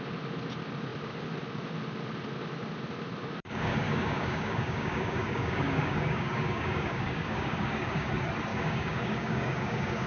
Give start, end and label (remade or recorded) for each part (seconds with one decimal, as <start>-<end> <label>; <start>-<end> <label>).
0.0-3.4 recorded; 3.4-8.1 remade; 8.1-8.5 recorded; 8.5-10.1 remade

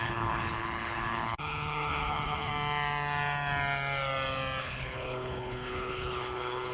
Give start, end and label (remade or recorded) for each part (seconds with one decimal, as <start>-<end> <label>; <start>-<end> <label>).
0.0-2.5 remade; 2.5-4.6 recorded; 4.6-6.7 remade

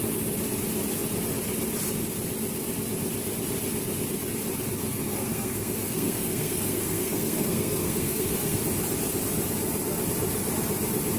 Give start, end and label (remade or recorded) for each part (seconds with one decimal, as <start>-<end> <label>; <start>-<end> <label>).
0.0-4.8 recorded; 4.8-8.6 remade; 8.6-11.2 recorded